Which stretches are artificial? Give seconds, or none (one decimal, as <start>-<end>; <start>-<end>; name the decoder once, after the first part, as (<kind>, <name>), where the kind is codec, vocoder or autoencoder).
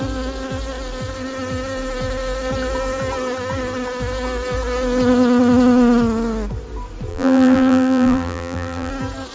7.1-8.9 (vocoder, BigVGAN v2)